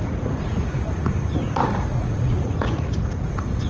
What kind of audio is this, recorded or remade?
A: remade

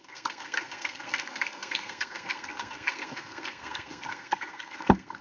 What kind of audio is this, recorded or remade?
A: remade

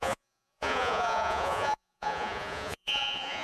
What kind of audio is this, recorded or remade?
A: remade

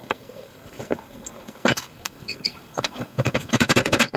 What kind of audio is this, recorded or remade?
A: remade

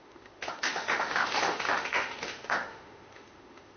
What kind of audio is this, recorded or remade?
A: remade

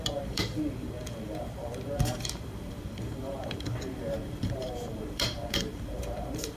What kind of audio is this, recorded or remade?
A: remade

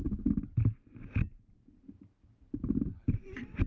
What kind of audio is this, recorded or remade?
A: remade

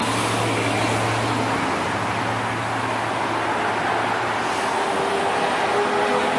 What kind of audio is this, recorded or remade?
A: recorded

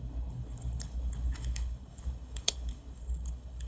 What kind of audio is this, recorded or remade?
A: remade